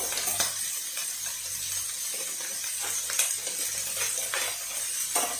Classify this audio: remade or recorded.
recorded